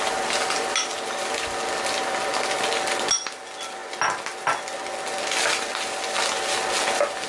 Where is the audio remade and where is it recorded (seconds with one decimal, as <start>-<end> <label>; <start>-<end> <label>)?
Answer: 0.0-7.3 recorded